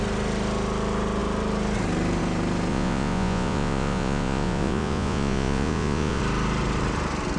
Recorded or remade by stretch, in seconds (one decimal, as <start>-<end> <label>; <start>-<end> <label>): 0.0-2.7 recorded; 2.7-6.2 remade; 6.2-7.4 recorded